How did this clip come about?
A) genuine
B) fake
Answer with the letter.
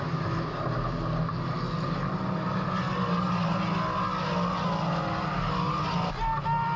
A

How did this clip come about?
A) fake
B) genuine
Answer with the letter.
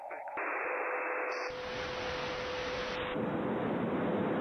B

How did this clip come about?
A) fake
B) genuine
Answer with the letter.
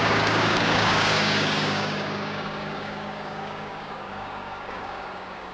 A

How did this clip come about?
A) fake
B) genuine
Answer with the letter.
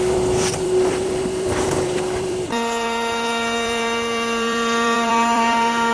A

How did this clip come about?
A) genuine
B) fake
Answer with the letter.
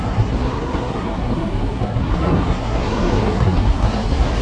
B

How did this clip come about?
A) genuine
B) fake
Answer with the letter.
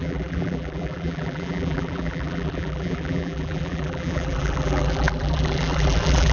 B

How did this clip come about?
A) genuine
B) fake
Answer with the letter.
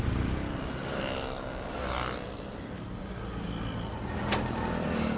A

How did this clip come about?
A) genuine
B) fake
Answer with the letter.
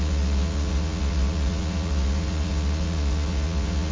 B